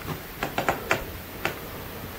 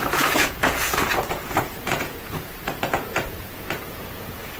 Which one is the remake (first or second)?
second